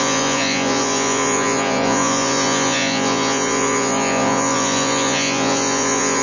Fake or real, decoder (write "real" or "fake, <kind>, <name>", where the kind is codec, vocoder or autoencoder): fake, vocoder, Vocos